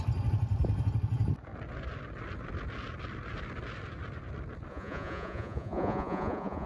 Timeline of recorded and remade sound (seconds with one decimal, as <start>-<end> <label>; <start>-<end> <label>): 0.0-4.7 recorded; 4.7-6.7 remade